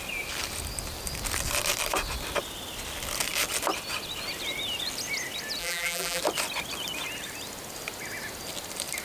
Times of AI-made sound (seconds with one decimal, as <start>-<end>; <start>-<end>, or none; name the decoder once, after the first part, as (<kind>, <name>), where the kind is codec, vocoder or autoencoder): 5.6-6.2 (vocoder, BigVGAN v2)